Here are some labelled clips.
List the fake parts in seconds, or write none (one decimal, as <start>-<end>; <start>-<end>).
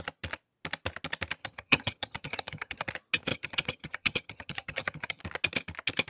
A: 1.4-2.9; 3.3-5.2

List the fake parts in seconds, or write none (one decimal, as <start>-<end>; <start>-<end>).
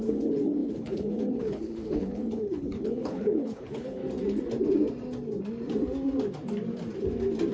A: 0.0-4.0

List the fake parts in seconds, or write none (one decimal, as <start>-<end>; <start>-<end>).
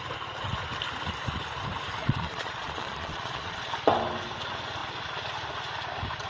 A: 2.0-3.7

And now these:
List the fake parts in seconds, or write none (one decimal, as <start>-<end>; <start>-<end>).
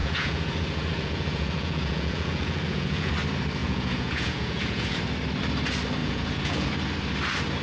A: 0.0-3.1; 3.6-5.0; 6.0-6.7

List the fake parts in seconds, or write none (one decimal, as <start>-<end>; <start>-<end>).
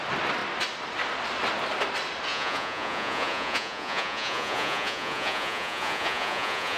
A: 2.3-6.8